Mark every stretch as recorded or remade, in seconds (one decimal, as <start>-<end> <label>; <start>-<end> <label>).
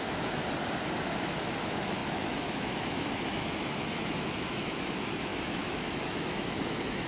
0.0-0.4 remade; 0.4-1.2 recorded; 1.2-7.1 remade